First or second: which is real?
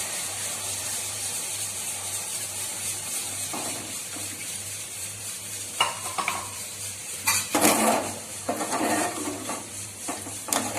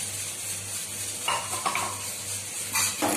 second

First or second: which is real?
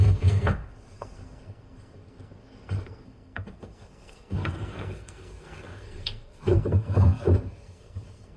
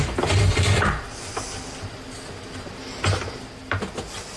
second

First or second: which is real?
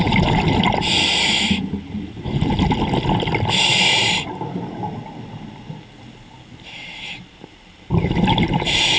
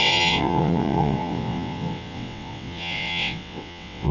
first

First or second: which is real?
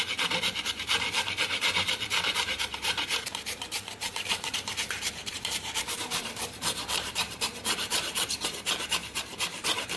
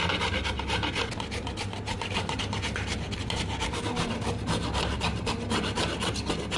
second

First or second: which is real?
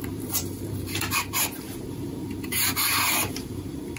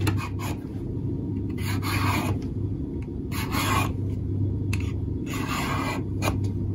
second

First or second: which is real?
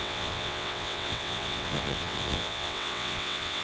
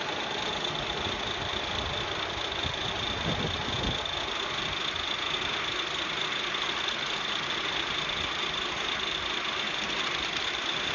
second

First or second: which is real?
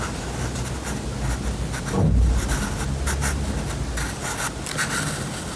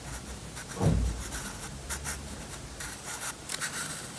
first